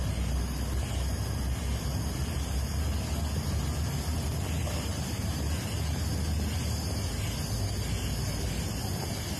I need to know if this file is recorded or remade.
recorded